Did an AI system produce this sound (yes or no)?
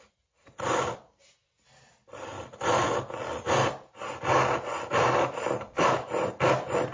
no